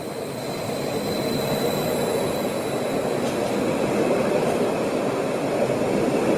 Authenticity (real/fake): real